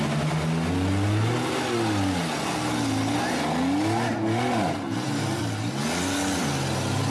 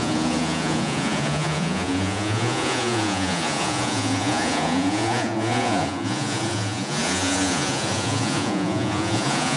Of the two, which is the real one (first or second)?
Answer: first